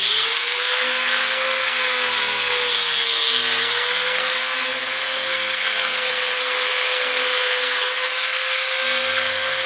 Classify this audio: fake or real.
fake